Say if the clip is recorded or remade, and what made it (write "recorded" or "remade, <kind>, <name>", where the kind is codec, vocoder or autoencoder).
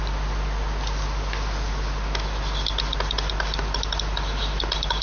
recorded